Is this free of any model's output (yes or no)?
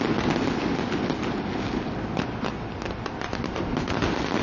yes